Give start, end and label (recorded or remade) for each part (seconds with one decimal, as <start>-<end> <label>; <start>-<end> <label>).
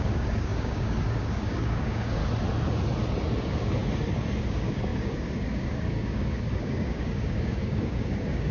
0.0-2.2 remade; 2.2-3.4 recorded; 3.4-3.8 remade; 3.8-4.4 recorded; 4.4-8.5 remade